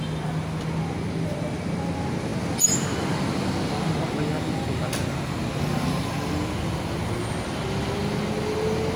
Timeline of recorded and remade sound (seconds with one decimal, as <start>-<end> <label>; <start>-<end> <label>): 0.0-9.0 recorded